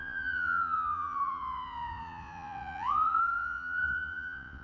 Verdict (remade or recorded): remade